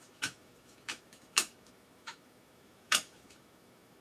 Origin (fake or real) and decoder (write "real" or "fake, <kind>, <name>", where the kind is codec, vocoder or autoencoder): fake, autoencoder, DAC-VAE